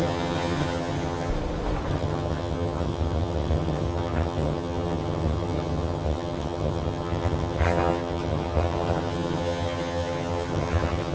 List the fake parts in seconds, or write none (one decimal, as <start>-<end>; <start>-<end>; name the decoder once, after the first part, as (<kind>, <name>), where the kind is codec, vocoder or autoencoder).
0.0-1.3 (vocoder, HiFi-GAN); 1.9-11.1